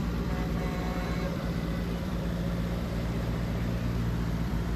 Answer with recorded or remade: remade